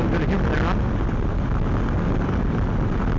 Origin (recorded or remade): recorded